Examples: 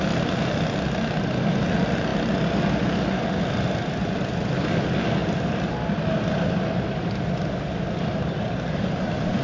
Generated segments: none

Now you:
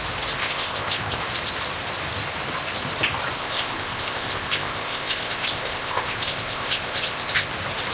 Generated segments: 0.4-1.2 (codec, ZipCodec); 3.4-7.5

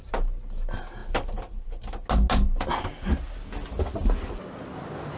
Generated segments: none

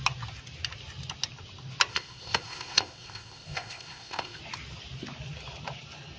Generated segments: 1.9-4.4 (codec, ZipCodec)

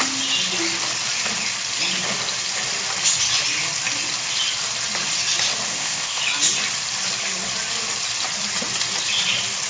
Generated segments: 5.7-6.2 (codec, ZipCodec)

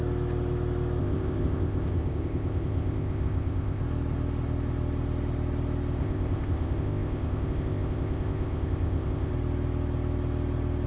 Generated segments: 1.0-3.8 (codec, ZipCodec); 6.0-9.3

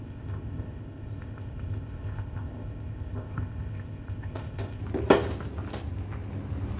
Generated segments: 0.0-4.8 (codec, ZipCodec)